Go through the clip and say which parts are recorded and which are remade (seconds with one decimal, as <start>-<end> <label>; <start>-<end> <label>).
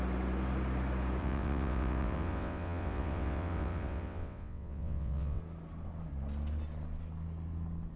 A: 0.0-1.2 recorded; 1.2-5.4 remade; 5.4-8.0 recorded